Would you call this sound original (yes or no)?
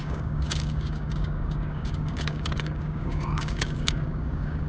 no